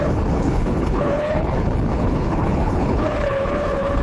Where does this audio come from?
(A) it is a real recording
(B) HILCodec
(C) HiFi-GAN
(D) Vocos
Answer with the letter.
B